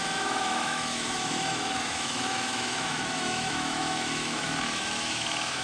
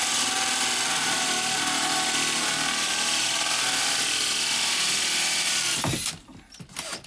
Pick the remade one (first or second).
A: first